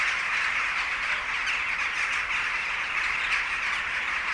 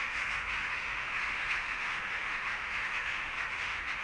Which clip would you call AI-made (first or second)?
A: second